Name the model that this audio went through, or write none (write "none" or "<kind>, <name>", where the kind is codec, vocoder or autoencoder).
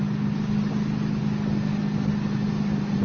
none